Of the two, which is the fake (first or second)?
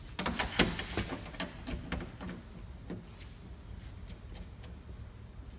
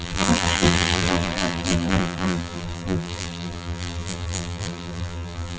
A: second